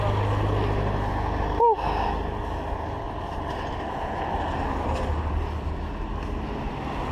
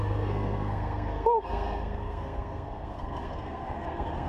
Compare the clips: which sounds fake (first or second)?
second